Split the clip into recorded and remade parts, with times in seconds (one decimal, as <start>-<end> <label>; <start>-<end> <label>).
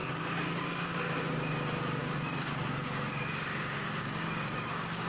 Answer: 0.0-1.2 remade; 1.2-2.0 recorded; 2.0-5.1 remade